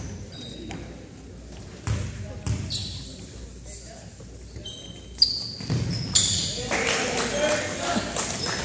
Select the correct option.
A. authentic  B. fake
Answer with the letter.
A